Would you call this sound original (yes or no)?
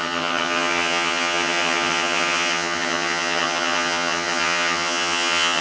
no